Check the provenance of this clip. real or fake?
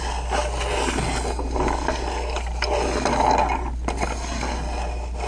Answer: real